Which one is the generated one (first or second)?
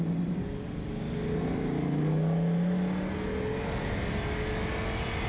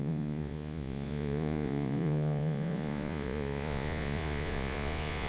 second